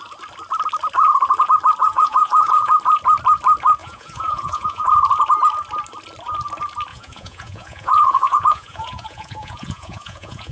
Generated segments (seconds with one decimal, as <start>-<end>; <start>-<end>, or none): 1.8-2.7; 3.8-4.9; 6.9-10.5